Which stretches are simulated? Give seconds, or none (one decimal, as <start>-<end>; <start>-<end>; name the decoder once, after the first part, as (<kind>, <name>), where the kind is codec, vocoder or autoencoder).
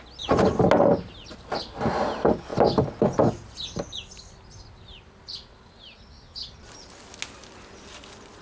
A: none